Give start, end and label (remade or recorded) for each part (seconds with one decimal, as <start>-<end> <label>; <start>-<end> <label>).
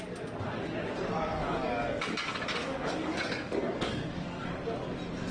0.0-1.3 recorded; 1.3-4.5 remade; 4.5-5.3 recorded